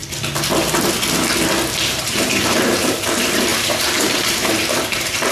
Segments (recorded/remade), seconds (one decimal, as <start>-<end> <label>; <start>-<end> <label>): 0.0-1.9 recorded; 1.9-5.3 remade